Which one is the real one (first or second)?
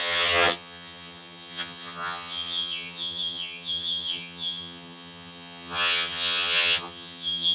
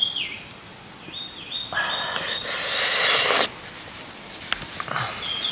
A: second